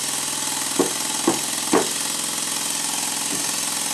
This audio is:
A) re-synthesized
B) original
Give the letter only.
B